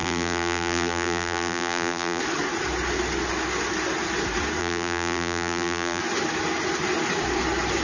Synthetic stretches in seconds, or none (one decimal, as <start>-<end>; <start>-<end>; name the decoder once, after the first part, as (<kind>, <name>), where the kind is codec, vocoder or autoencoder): 0.0-2.2 (vocoder, BigVGAN v2); 4.6-6.0